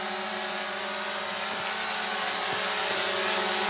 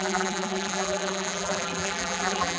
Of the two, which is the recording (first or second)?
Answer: first